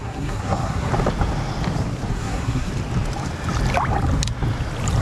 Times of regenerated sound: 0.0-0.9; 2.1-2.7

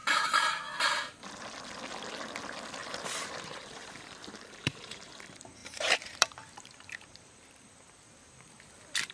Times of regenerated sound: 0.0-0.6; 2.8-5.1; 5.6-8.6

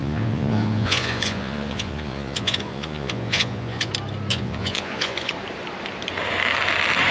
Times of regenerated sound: 0.0-3.9; 4.3-5.3